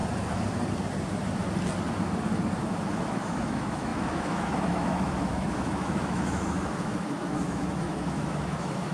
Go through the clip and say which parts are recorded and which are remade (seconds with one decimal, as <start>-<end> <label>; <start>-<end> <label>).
0.0-2.6 recorded; 2.6-8.9 remade